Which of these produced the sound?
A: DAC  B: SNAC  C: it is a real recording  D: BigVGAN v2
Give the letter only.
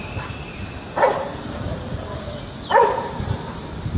C